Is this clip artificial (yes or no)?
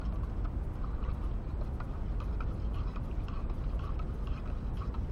no